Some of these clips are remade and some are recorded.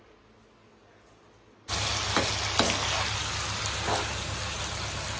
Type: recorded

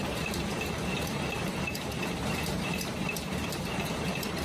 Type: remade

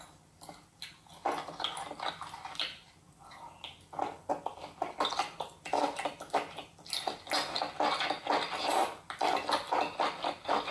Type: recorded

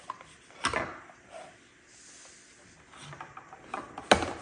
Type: recorded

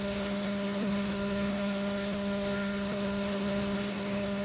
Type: remade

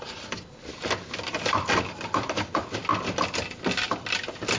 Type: recorded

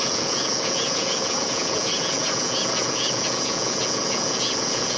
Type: remade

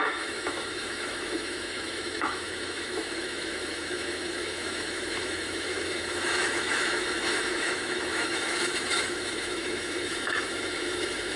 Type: remade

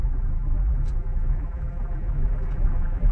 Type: remade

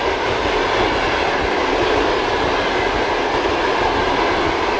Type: recorded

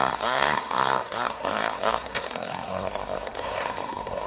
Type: remade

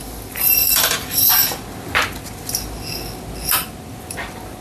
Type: recorded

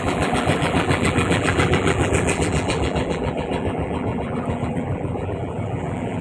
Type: remade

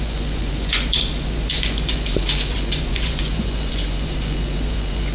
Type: remade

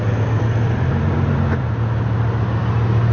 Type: recorded